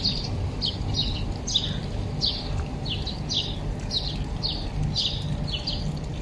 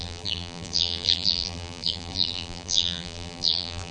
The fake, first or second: second